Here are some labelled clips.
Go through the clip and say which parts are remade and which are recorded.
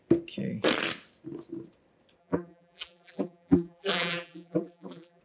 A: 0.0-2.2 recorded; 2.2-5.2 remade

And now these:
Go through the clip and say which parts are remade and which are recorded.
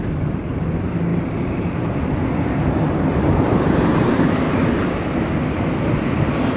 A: 0.0-1.1 recorded; 1.1-1.9 remade; 1.9-3.1 recorded; 3.1-5.0 remade; 5.0-6.6 recorded